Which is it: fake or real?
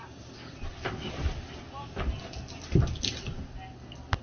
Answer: real